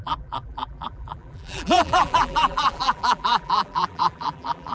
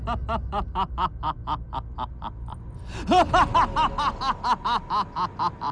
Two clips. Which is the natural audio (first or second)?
second